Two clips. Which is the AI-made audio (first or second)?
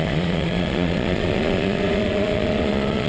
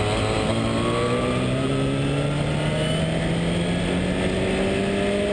first